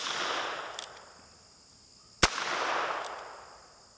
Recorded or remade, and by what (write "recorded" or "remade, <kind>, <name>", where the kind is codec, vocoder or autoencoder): recorded